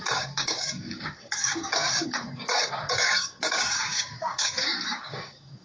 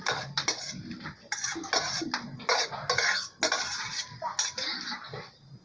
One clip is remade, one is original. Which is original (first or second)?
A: second